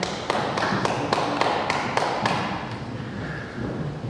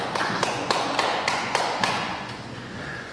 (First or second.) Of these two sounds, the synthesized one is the second